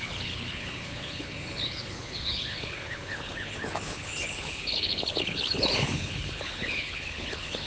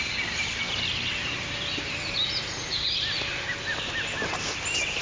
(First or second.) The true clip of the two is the second